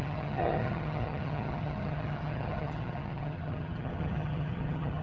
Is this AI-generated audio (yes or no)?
yes